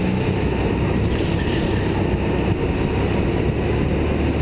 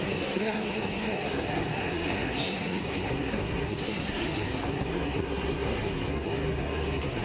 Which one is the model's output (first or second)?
second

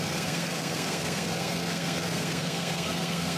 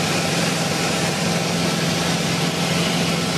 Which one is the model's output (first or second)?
first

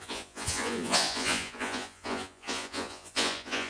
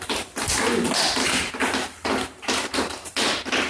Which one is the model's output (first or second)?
first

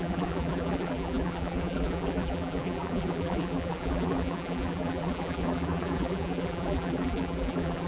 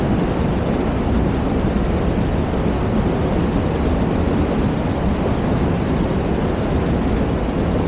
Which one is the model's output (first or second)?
first